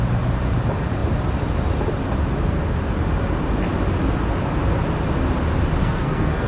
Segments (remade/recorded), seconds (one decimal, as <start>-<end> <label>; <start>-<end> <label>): 0.0-5.8 recorded; 5.8-6.5 remade